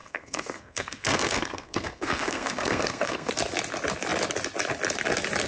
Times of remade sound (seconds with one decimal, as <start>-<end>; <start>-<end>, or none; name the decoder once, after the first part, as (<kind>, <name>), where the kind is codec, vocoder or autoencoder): 0.0-3.3 (codec, SNAC)